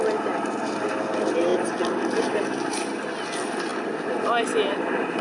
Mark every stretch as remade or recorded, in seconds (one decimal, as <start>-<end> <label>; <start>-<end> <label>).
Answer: 0.0-5.2 recorded